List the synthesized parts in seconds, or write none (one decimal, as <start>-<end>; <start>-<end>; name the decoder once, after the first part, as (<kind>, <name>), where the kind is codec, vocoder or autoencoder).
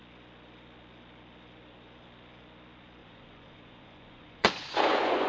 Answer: 3.0-5.3 (vocoder, Vocos)